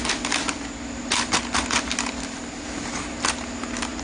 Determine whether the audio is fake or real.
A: real